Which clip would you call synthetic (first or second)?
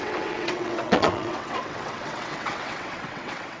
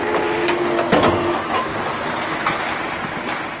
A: first